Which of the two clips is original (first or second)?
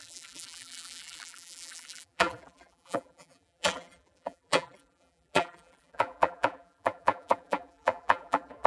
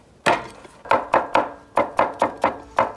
second